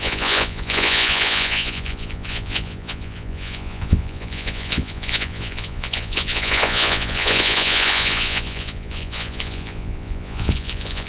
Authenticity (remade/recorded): remade